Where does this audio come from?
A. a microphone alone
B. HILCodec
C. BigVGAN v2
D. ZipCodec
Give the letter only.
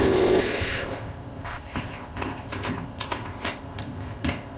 D